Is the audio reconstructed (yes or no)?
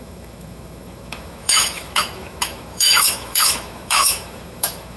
yes